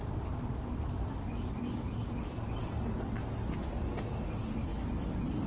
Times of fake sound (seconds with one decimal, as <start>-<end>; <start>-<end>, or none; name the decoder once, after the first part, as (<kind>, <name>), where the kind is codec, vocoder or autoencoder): none